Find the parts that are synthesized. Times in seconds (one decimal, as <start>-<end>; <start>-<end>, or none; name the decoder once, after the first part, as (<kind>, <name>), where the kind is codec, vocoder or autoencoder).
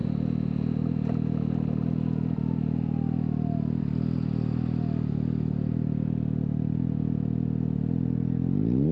none